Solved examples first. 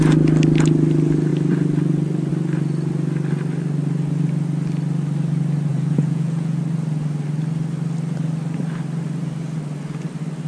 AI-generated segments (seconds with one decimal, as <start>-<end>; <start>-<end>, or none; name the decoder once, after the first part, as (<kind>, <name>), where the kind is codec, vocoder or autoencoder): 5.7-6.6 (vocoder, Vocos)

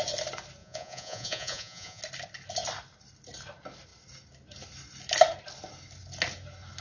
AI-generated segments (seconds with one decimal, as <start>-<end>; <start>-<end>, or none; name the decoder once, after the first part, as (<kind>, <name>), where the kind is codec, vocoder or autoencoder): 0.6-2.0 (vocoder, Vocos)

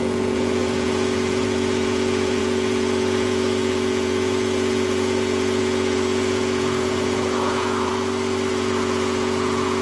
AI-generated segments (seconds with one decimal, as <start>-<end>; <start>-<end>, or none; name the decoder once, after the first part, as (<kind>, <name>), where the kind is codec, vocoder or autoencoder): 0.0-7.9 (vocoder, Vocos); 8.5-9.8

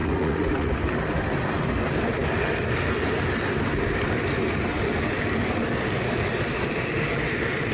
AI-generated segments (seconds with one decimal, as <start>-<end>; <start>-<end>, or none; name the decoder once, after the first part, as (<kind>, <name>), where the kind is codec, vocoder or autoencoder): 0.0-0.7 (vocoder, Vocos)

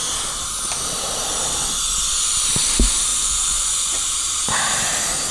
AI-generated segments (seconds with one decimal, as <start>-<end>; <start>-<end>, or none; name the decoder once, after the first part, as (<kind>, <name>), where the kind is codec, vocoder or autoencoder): 3.1-4.0 (vocoder, Vocos)

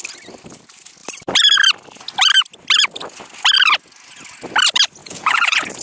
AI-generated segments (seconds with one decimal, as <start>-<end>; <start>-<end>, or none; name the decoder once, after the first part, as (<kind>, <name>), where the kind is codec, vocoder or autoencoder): 5.0-5.8 (vocoder, Vocos)